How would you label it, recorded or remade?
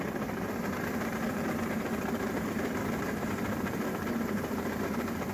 remade